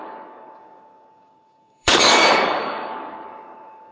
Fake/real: fake